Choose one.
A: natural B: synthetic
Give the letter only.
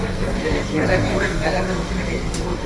B